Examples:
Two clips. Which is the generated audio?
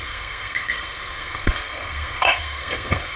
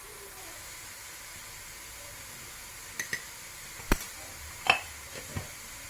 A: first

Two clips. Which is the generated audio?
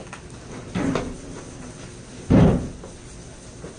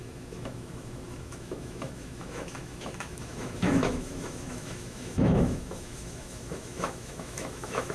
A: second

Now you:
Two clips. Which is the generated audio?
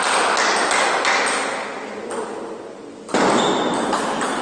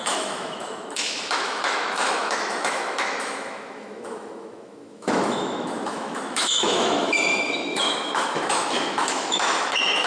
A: second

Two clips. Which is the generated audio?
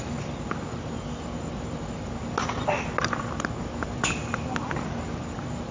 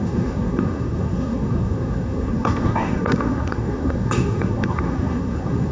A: second